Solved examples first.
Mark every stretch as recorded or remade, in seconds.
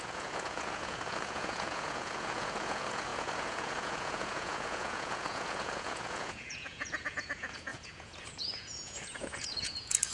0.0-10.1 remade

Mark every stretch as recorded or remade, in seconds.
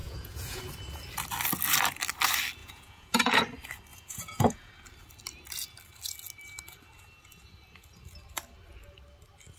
0.0-0.6 remade; 0.6-2.6 recorded; 2.6-3.4 remade; 3.4-3.9 recorded; 3.9-4.7 remade; 4.7-9.6 recorded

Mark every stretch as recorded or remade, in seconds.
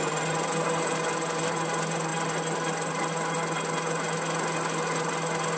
0.0-5.6 recorded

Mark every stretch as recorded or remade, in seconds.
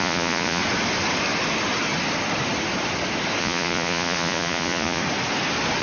0.0-0.6 remade; 0.6-3.4 recorded; 3.4-5.0 remade; 5.0-5.8 recorded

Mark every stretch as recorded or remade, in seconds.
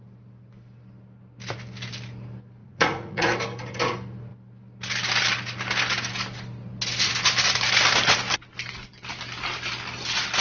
0.0-2.6 recorded; 2.6-3.3 remade; 3.3-10.4 recorded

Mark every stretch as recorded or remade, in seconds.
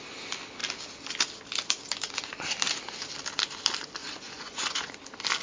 0.0-4.0 recorded; 4.0-4.9 remade; 4.9-5.4 recorded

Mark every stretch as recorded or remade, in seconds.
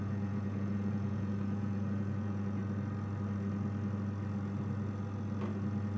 0.0-2.6 remade; 2.6-6.0 recorded